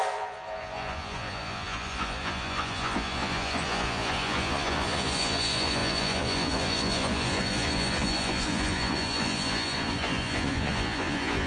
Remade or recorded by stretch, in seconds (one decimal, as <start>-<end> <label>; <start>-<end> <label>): 0.0-11.5 remade